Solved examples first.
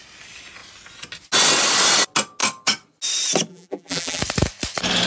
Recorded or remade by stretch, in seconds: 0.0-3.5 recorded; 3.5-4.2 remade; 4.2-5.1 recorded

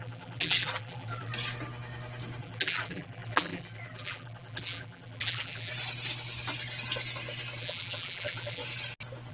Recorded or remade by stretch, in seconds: 0.0-1.3 remade; 1.3-2.4 recorded; 2.4-5.7 remade; 5.7-7.6 recorded; 7.6-8.6 remade; 8.6-9.3 recorded

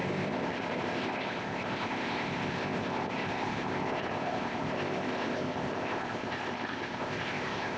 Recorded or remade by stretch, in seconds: 0.0-7.8 remade

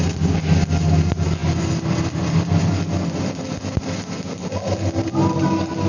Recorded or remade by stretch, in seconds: 0.0-5.9 recorded

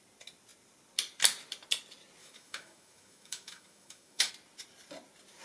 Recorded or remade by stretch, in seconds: 0.0-2.2 recorded; 2.2-4.3 remade; 4.3-5.4 recorded

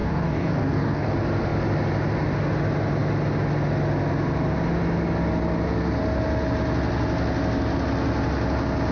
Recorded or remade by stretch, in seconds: 0.0-1.1 remade; 1.1-8.9 recorded